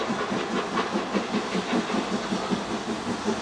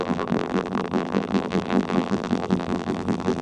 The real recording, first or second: first